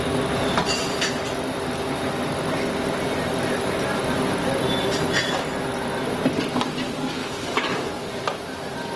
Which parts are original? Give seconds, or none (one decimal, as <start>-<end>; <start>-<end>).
0.0-7.2; 7.9-9.0